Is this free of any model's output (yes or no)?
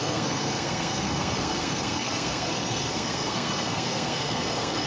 no